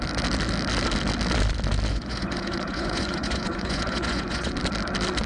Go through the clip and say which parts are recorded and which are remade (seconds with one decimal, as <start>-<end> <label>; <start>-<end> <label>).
0.0-1.9 recorded; 1.9-4.5 remade; 4.5-5.3 recorded